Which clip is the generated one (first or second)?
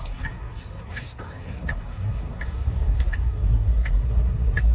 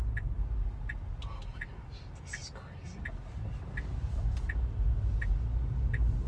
first